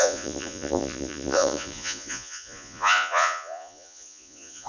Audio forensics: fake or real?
fake